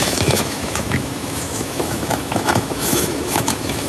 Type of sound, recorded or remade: remade